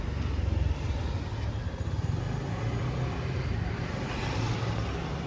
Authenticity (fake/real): real